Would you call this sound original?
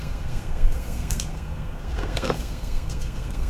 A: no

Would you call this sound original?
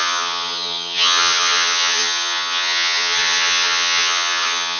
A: no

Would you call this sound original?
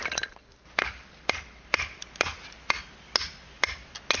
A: yes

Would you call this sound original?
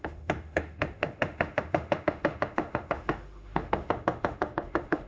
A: no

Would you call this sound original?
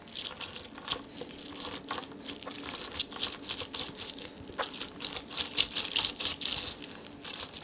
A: yes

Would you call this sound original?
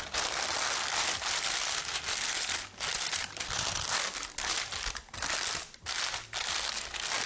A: yes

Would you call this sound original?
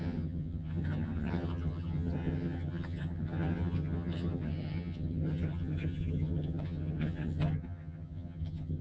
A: no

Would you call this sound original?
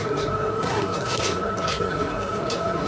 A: no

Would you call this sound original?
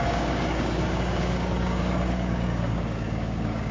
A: no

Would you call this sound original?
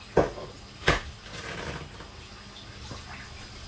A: yes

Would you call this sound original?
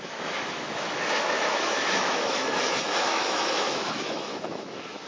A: no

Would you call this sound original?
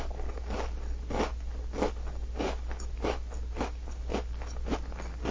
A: yes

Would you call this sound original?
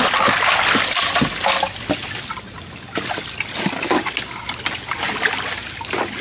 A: yes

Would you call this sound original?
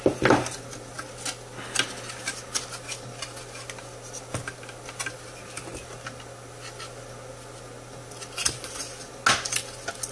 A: yes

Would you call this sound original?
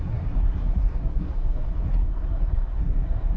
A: no